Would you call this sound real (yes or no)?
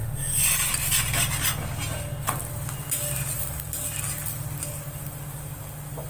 yes